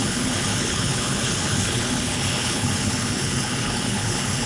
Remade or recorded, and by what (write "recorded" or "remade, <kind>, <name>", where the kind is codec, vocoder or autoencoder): remade, codec, HILCodec